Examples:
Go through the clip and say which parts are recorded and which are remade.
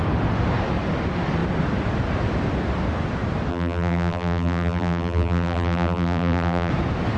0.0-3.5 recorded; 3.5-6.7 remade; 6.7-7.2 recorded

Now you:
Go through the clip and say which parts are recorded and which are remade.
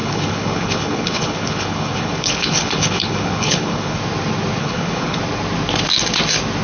0.0-4.0 remade; 4.0-4.6 recorded; 4.6-5.2 remade; 5.2-6.6 recorded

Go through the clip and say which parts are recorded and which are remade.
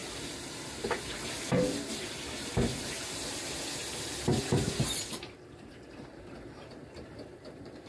0.0-7.9 remade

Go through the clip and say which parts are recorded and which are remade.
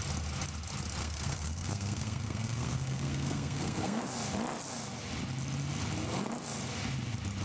0.0-1.0 recorded; 1.0-4.0 remade; 4.0-7.4 recorded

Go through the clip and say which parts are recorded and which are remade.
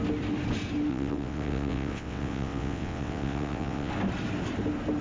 0.0-0.9 recorded; 0.9-3.9 remade; 3.9-5.0 recorded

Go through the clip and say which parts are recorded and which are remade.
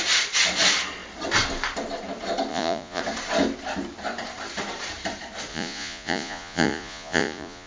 0.0-2.5 recorded; 2.5-3.0 remade; 3.0-5.5 recorded; 5.5-7.7 remade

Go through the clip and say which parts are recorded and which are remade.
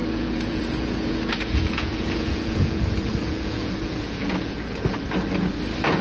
0.0-5.0 remade; 5.0-6.0 recorded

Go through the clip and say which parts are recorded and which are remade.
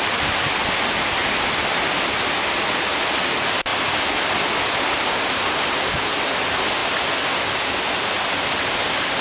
0.0-9.2 recorded